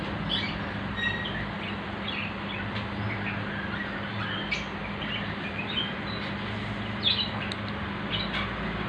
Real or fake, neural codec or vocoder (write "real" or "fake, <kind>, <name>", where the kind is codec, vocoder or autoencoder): real